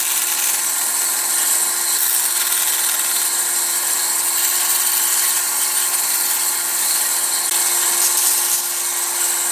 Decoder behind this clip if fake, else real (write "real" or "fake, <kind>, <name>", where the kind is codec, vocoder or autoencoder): real